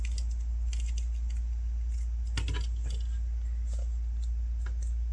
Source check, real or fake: real